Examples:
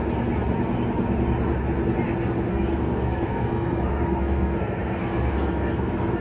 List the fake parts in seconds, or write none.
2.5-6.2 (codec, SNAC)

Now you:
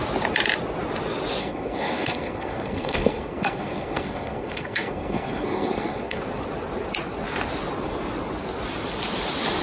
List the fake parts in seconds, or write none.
1.4-6.2 (codec, SNAC)

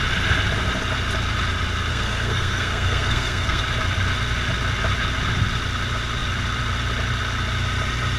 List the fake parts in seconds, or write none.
1.9-3.6 (codec, SNAC)

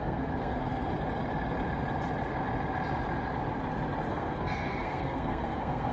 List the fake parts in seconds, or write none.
0.0-0.9 (codec, SNAC); 4.1-5.9

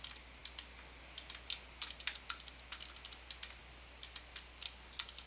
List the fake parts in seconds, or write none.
none

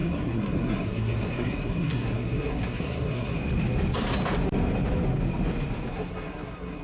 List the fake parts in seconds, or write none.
0.0-3.4 (codec, SNAC); 5.9-6.8

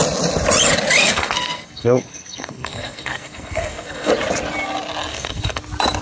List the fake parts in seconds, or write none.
1.0-4.1 (codec, SNAC); 5.1-5.6